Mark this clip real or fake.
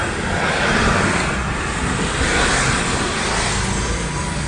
real